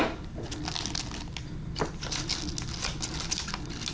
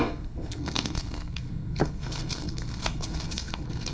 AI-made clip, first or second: second